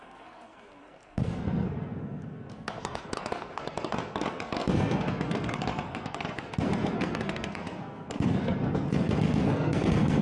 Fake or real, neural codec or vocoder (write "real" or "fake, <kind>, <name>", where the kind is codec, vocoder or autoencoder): fake, codec, SNAC